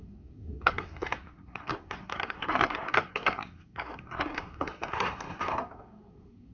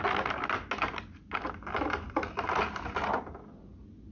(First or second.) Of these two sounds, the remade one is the first